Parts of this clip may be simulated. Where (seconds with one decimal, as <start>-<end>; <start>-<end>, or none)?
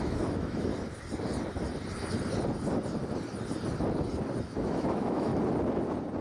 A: 0.0-0.7; 4.4-5.3